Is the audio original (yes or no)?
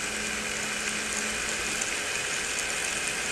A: yes